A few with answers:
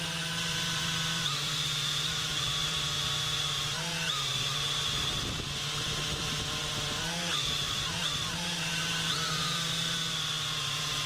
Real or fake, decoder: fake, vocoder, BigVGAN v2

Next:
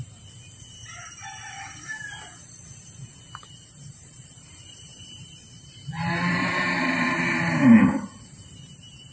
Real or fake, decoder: fake, vocoder, BigVGAN v2